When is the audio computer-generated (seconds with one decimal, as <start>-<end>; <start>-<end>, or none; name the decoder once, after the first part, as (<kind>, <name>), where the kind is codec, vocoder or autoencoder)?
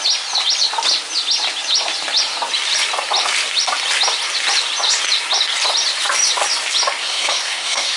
7.0-8.0 (codec, SNAC)